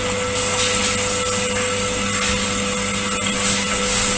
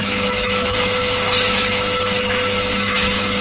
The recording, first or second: first